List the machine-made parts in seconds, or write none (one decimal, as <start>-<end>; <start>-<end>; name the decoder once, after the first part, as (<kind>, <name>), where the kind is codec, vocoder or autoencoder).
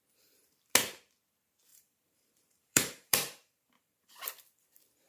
1.7-4.2 (vocoder, BigVGAN v2)